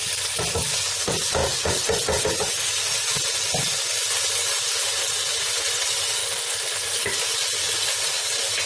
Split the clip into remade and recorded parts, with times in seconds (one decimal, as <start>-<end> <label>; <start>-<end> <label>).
0.0-8.7 recorded